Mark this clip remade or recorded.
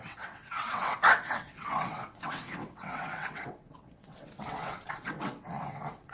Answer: remade